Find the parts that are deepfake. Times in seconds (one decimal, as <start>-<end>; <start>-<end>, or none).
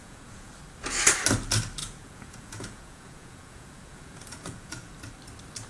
0.0-0.5; 1.8-4.9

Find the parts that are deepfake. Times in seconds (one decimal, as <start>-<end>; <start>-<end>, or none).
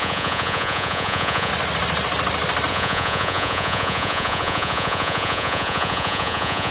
0.0-1.5; 2.7-6.7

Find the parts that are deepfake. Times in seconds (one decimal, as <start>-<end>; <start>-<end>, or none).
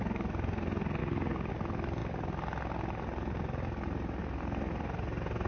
1.0-1.5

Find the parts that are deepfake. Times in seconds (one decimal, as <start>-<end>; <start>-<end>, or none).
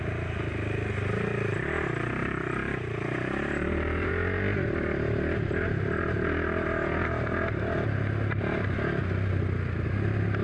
2.2-4.1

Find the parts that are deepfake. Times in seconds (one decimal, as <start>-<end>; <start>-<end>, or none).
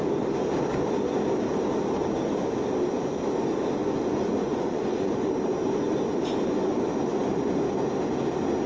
3.8-5.3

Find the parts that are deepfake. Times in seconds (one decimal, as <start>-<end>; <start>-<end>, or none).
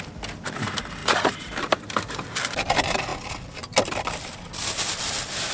1.0-1.9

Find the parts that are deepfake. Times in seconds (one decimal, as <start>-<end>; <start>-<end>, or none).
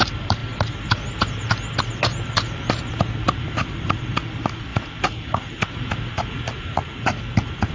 0.0-0.4; 1.9-7.7